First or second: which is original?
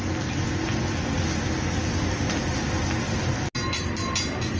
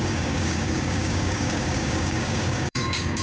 first